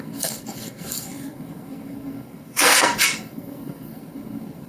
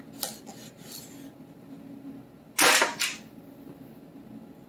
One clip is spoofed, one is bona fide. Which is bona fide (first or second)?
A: second